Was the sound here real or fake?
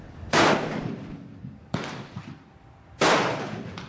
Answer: fake